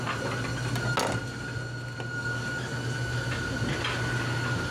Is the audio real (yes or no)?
yes